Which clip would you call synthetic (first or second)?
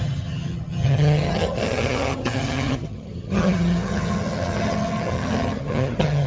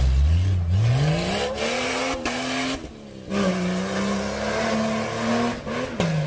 first